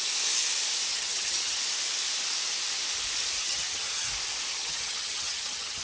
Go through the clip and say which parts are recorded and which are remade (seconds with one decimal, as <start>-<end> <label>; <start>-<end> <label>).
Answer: 0.0-0.9 recorded; 0.9-1.6 remade; 1.6-3.4 recorded; 3.4-4.1 remade; 4.1-4.5 recorded; 4.5-5.8 remade

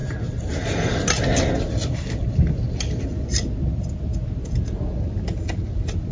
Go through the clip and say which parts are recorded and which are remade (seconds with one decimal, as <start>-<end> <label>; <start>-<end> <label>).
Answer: 0.0-6.1 recorded

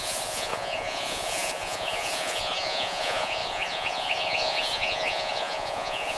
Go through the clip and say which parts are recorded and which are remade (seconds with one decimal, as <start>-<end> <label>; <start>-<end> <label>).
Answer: 0.0-6.2 remade